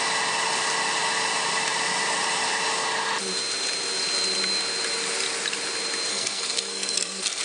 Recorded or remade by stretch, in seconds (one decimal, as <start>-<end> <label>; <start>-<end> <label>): 0.0-6.1 recorded; 6.1-7.4 remade